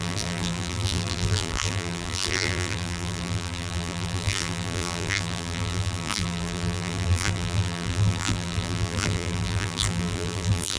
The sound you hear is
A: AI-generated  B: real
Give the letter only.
A